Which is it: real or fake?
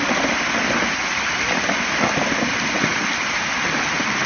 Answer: real